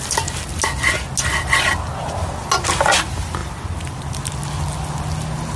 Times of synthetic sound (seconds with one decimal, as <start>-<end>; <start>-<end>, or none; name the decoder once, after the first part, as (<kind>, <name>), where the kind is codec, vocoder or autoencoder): none